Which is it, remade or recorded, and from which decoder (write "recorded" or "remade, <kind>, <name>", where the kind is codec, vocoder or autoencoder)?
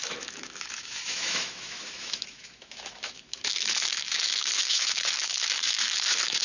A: remade, autoencoder, DAC-VAE